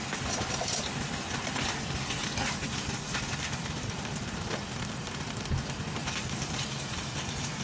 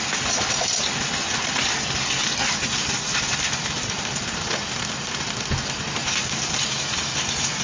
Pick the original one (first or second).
second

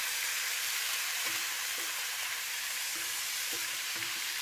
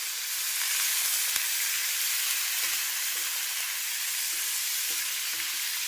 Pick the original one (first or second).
second